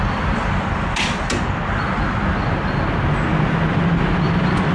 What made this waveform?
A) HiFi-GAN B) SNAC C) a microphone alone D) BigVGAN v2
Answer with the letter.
C